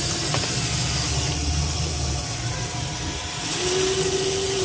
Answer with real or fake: real